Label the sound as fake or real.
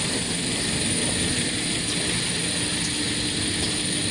real